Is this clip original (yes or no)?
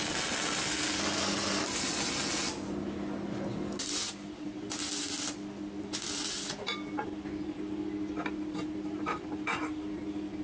yes